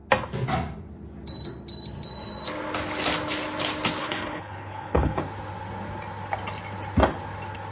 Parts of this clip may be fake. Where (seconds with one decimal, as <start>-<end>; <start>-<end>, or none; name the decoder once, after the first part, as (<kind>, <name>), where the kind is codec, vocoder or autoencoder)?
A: 4.0-5.2 (codec, HILCodec)